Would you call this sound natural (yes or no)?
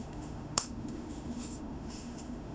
no